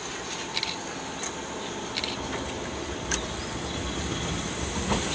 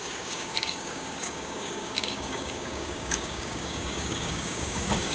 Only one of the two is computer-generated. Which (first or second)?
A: second